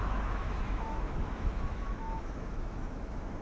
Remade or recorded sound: remade